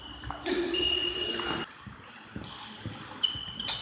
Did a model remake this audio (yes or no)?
no